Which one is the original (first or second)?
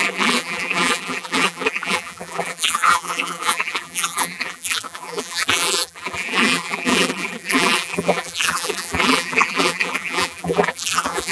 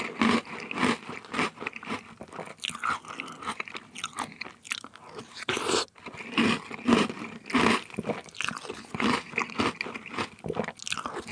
second